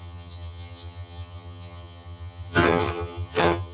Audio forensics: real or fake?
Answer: fake